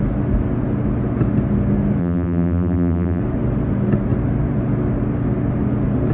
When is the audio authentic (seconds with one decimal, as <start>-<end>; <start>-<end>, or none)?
0.0-2.0; 3.2-6.1